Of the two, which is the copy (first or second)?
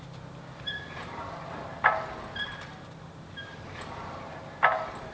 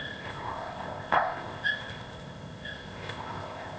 second